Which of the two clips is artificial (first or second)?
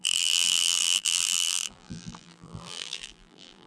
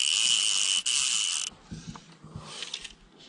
first